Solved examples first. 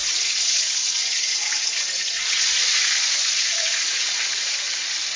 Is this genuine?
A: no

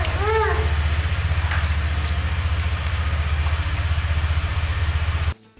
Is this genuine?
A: yes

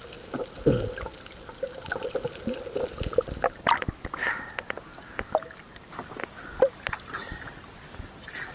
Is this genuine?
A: yes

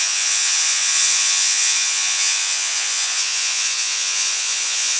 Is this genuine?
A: no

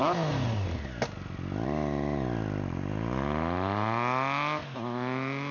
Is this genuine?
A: yes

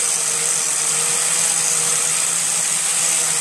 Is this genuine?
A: yes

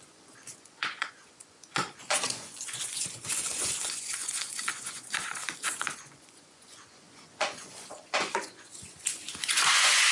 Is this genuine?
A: no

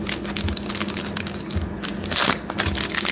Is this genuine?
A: yes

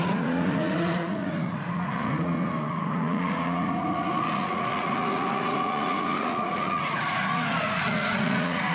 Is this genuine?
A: no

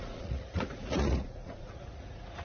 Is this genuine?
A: no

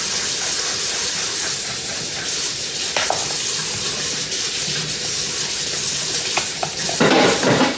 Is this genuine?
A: yes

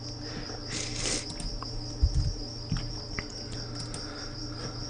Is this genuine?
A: yes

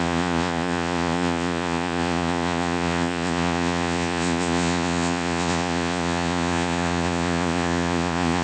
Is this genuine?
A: no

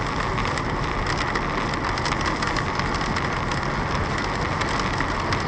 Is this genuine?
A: yes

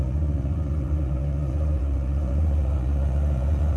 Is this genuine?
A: no